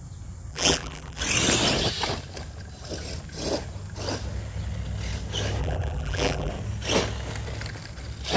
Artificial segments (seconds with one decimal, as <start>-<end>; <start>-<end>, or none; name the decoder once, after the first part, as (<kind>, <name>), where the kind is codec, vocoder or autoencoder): 0.5-1.2 (vocoder, BigVGAN v2); 5.6-6.5